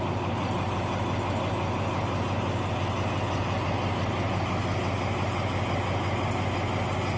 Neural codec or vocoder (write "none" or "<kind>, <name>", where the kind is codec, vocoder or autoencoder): none